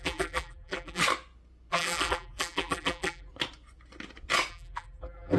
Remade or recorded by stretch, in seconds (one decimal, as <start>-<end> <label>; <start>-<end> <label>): 0.0-1.0 remade; 1.0-1.7 recorded; 1.7-3.3 remade; 3.3-4.5 recorded; 4.5-5.4 remade

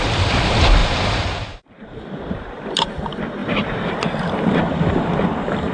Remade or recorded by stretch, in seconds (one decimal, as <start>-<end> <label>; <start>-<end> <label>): 0.0-0.8 recorded; 0.8-3.0 remade; 3.0-3.4 recorded; 3.4-4.6 remade; 4.6-5.7 recorded

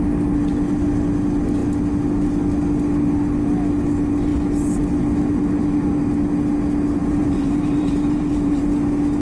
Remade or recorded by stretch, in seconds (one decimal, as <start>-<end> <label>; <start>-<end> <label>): 0.0-7.0 recorded; 7.0-8.6 remade; 8.6-9.2 recorded

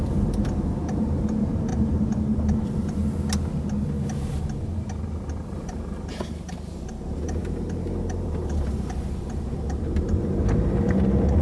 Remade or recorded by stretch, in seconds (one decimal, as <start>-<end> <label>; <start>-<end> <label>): 0.0-3.0 remade; 3.0-5.4 recorded; 5.4-11.4 remade

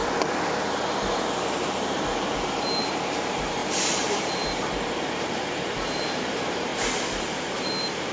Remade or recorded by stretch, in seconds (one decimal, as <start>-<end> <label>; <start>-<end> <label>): 0.0-1.1 recorded; 1.1-6.7 remade; 6.7-7.5 recorded; 7.5-8.1 remade

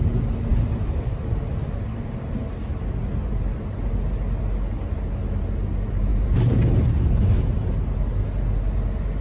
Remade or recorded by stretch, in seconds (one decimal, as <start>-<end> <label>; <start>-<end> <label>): 0.0-0.5 recorded; 0.5-3.8 remade; 3.8-6.1 recorded; 6.1-6.7 remade; 6.7-9.2 recorded

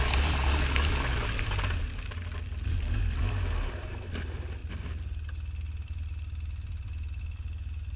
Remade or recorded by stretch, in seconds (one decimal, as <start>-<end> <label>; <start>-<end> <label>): 0.0-1.1 recorded; 1.1-3.2 remade; 3.2-4.6 recorded; 4.6-7.2 remade; 7.2-8.0 recorded